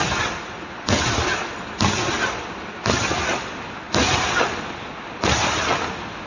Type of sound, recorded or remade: recorded